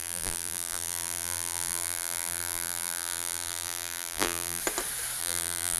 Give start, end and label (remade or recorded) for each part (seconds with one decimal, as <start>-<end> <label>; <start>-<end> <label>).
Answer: 0.0-4.6 remade; 4.6-5.2 recorded; 5.2-5.8 remade